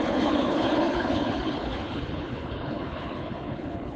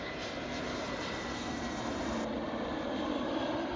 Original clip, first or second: second